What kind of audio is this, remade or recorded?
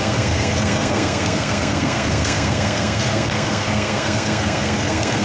remade